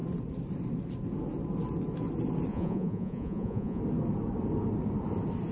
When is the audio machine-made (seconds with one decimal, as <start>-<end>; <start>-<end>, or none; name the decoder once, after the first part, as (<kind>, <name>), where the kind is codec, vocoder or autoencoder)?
2.5-3.8 (vocoder, Vocos)